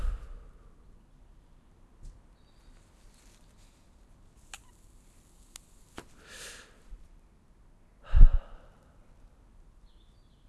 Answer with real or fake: real